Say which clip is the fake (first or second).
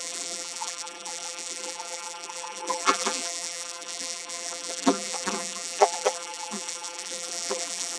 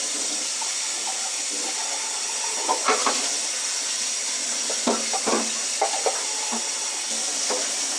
first